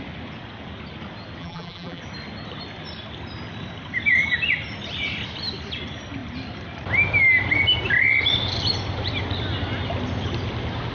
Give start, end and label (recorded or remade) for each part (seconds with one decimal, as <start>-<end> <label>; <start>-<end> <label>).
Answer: 0.0-1.4 recorded; 1.4-2.0 remade; 2.0-10.9 recorded